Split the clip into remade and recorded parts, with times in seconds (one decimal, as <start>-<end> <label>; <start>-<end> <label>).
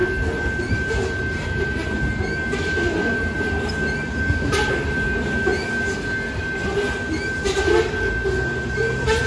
0.0-9.3 recorded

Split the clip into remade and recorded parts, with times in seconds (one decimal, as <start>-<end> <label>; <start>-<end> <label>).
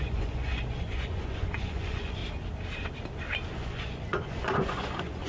0.0-2.2 remade; 2.2-3.5 recorded; 3.5-5.3 remade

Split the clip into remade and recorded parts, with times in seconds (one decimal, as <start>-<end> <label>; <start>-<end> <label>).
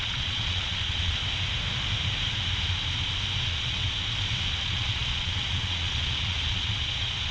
0.0-1.2 remade; 1.2-3.4 recorded; 3.4-3.8 remade; 3.8-4.5 recorded; 4.5-7.3 remade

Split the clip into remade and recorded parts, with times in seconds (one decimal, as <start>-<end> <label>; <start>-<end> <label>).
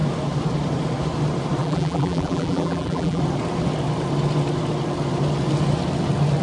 0.0-1.6 recorded; 1.6-3.2 remade; 3.2-6.4 recorded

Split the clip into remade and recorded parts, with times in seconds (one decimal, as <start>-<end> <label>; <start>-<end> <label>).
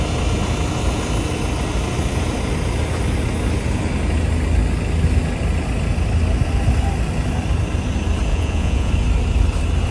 0.0-8.3 recorded; 8.3-8.9 remade; 8.9-9.9 recorded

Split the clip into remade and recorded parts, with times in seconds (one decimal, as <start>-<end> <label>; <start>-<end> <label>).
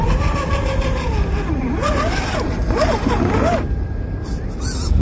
0.0-5.0 remade